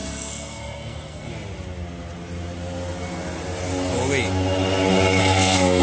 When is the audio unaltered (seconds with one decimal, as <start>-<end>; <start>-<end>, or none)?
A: 1.3-5.2